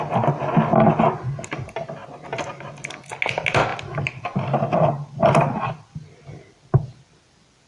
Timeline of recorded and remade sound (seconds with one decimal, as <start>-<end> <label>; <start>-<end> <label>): 0.0-7.7 recorded